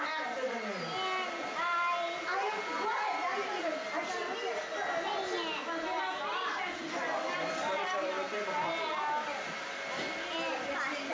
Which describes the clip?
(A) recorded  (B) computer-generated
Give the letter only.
A